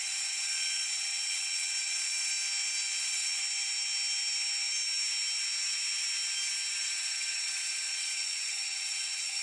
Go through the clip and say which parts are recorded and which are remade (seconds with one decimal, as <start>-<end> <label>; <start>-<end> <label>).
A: 0.0-2.3 remade; 2.3-3.0 recorded; 3.0-3.4 remade; 3.4-6.8 recorded; 6.8-9.4 remade